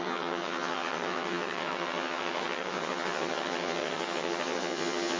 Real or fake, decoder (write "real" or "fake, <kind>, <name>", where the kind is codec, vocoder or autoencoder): fake, vocoder, HiFi-GAN